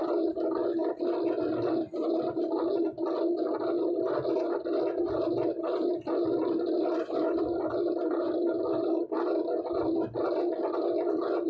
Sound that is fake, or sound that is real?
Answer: real